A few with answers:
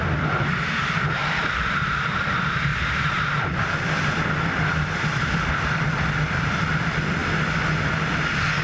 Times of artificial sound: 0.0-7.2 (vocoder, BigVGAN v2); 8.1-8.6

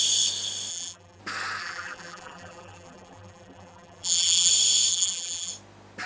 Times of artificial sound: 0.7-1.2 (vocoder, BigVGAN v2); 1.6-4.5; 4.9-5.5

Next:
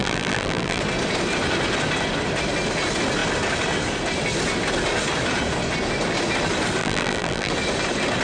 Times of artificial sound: 0.0-0.8 (vocoder, BigVGAN v2); 6.8-7.5

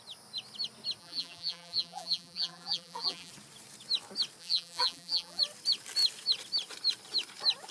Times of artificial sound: 1.0-3.3 (vocoder, BigVGAN v2); 4.4-5.4

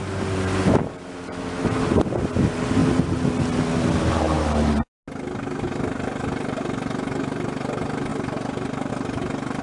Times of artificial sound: none

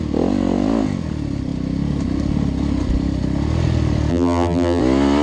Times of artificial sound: 4.1-4.8 (vocoder, BigVGAN v2)

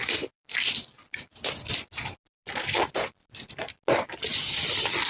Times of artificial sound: none